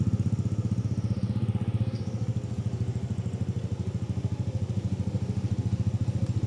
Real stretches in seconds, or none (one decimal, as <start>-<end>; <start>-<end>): 0.0-6.5